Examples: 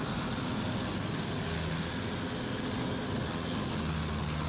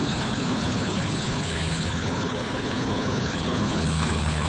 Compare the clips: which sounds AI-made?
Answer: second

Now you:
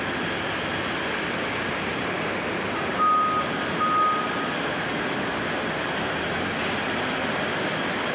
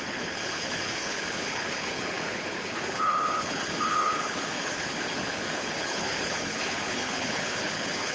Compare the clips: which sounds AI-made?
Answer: second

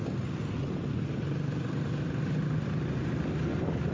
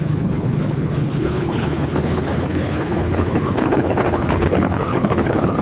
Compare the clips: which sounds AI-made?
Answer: second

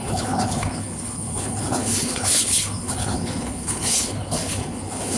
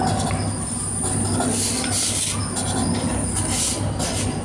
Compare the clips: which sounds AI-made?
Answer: first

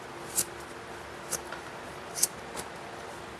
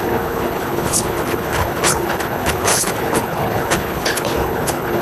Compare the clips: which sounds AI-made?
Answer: second